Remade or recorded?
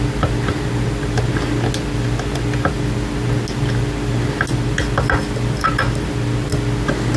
recorded